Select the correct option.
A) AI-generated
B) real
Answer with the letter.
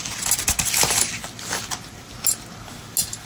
B